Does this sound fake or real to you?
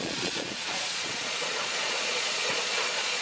fake